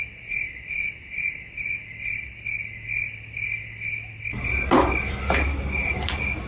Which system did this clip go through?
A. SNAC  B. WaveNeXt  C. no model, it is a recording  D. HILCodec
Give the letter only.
C